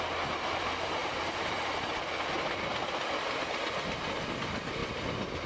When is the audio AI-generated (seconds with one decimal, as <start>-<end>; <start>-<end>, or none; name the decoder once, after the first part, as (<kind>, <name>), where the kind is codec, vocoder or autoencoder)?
1.0-3.4 (vocoder, BigVGAN v2); 4.8-5.5